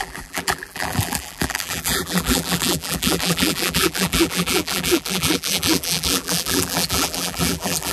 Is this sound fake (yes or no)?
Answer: yes